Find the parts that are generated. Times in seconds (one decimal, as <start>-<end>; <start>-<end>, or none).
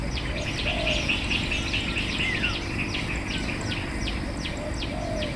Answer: 0.0-1.5